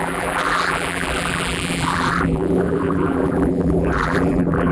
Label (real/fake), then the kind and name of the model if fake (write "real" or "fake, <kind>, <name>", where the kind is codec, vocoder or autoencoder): fake, vocoder, BigVGAN v2